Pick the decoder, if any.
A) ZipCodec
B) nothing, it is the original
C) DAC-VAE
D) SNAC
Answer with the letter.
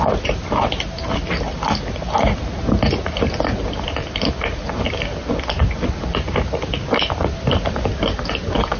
B